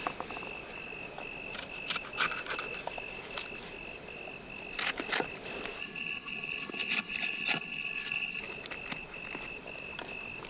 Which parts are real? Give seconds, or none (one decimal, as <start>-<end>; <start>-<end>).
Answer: 0.0-5.8; 8.4-10.5